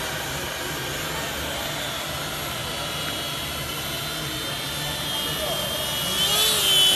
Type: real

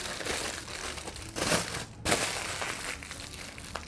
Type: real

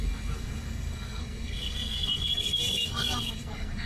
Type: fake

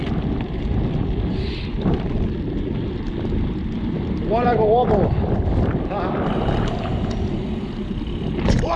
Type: fake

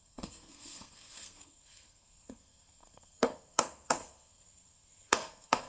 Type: fake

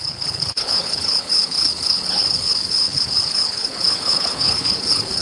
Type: fake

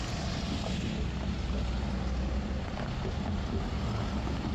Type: real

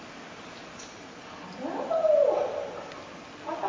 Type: real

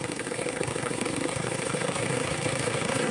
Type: fake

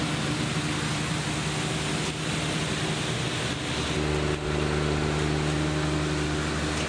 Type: real